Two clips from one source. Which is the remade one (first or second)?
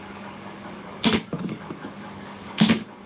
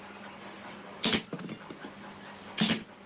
first